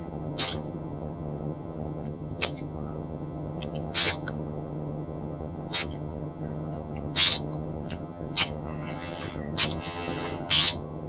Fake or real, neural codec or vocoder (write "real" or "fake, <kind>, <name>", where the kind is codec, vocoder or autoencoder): fake, vocoder, HiFi-GAN